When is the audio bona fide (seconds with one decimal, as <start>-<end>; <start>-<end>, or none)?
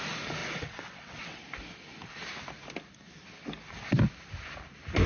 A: 0.0-0.4; 1.4-5.1